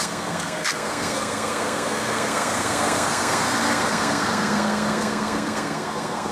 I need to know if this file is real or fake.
fake